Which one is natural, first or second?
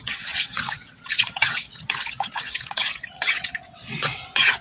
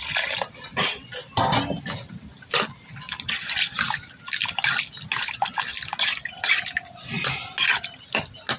second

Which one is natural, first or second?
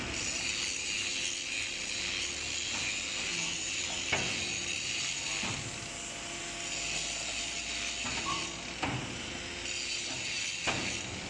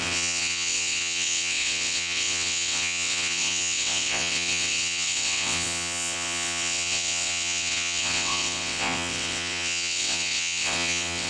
first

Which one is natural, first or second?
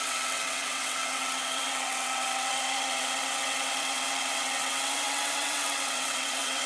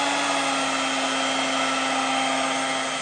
second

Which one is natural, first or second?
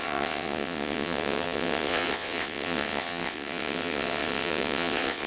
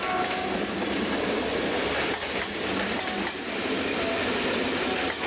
second